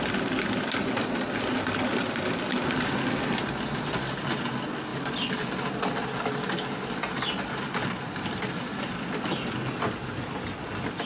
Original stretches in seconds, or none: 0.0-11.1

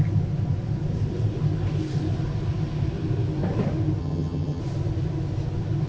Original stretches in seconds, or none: 0.0-4.0; 4.6-5.9